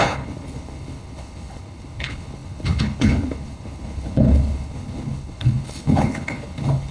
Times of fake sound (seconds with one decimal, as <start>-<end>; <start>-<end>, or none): 0.0-6.9